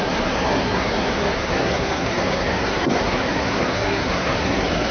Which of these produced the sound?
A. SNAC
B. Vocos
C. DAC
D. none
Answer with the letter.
A